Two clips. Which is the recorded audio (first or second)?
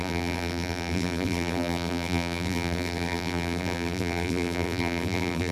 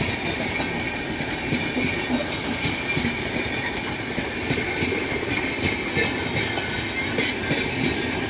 second